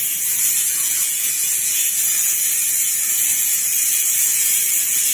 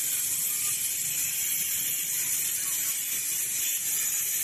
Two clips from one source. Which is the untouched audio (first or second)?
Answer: second